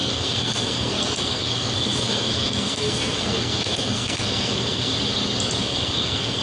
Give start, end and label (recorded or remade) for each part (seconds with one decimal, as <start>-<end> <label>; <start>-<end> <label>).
0.0-4.9 remade; 4.9-5.6 recorded; 5.6-6.4 remade